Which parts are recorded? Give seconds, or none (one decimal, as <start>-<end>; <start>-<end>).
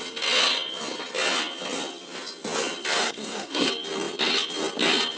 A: 0.0-3.0; 3.7-5.2